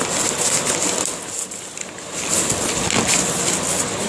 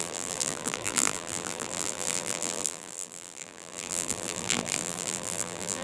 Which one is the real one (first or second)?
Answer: first